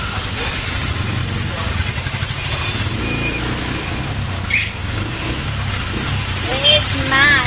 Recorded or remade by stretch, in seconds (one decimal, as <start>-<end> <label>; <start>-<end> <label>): 0.0-7.5 recorded